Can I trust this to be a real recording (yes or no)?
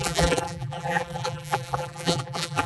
no